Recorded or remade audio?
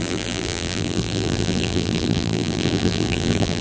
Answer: remade